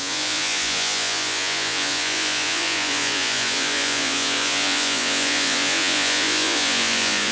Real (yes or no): no